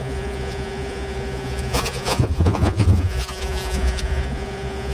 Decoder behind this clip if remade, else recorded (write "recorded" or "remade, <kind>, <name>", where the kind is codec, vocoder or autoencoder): remade, vocoder, Vocos